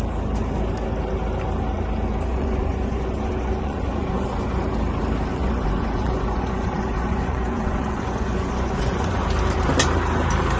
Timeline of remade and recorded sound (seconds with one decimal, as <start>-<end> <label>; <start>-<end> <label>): 0.0-2.3 recorded; 2.3-4.6 remade; 4.6-5.3 recorded; 5.3-9.2 remade; 9.2-10.6 recorded